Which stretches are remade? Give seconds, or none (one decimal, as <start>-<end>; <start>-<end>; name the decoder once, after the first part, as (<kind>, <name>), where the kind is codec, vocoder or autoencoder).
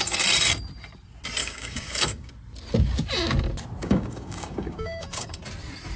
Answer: 1.4-2.3 (codec, DAC); 3.8-5.4